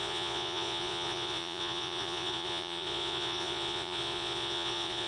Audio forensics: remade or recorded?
remade